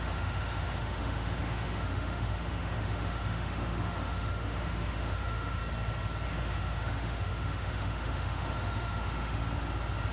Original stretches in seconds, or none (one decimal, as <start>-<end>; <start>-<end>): 5.6-6.3; 9.4-10.1